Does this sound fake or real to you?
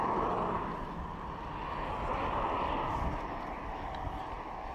real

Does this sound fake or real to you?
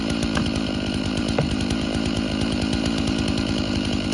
fake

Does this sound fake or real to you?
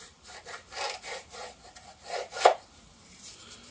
fake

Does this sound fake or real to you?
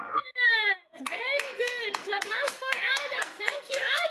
fake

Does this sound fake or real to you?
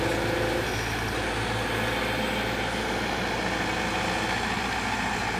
real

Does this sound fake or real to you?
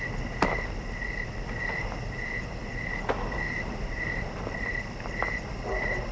real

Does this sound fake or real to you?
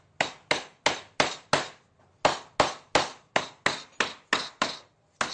real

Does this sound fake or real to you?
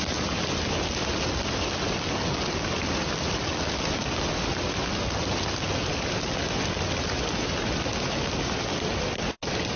real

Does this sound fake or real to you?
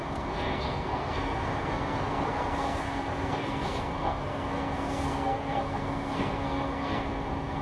fake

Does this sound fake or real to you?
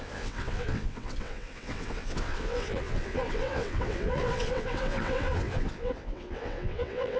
fake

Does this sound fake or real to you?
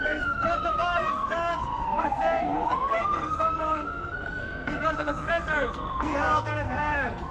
fake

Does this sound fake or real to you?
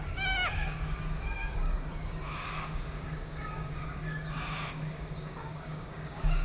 fake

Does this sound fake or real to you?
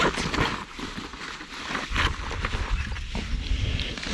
real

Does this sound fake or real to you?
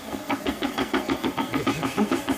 fake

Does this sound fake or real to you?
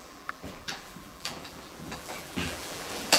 fake